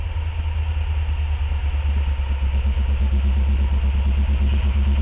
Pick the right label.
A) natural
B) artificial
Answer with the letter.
A